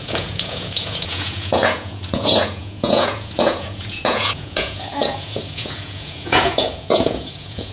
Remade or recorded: remade